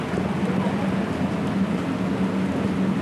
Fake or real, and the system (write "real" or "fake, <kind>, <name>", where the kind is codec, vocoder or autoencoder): real